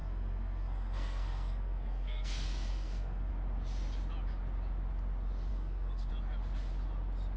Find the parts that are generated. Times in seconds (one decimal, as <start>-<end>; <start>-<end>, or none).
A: 0.0-3.3; 5.5-6.1